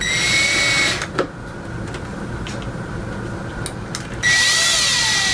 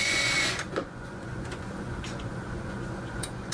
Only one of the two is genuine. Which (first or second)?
first